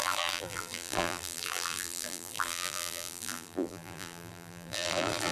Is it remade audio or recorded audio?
remade